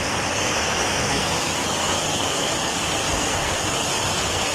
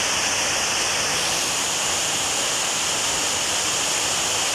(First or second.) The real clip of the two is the second